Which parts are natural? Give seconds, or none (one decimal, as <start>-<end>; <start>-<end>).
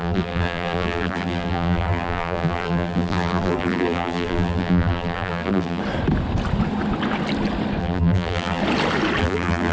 5.8-7.8; 8.6-9.2